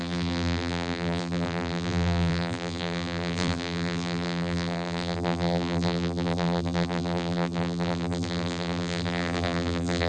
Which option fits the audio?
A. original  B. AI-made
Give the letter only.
B